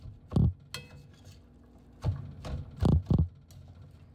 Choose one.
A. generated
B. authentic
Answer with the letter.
B